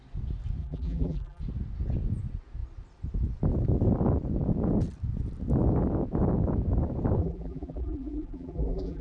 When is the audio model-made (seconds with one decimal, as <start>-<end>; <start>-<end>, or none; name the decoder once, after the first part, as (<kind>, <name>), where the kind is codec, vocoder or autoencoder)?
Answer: 0.6-1.4 (vocoder, BigVGAN v2); 7.2-9.0